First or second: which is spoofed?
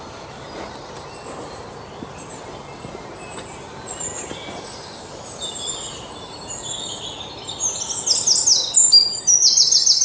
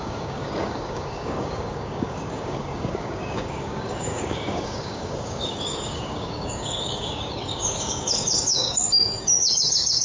second